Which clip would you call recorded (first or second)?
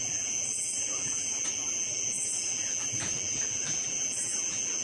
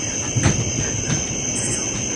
second